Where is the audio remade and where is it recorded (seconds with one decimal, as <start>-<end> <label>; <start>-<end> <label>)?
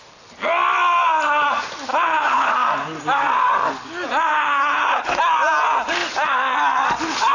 0.0-1.9 recorded; 1.9-2.5 remade; 2.5-4.3 recorded; 4.3-5.2 remade; 5.2-7.3 recorded